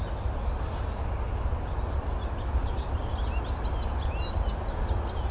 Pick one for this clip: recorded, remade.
recorded